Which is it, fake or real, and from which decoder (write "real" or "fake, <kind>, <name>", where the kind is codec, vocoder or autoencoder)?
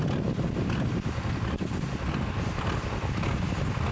real